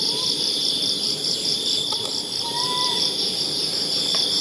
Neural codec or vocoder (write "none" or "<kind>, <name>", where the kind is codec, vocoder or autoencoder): vocoder, BigVGAN v2